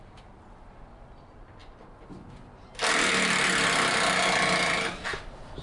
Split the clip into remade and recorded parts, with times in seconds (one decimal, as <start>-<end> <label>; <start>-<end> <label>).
0.0-5.6 recorded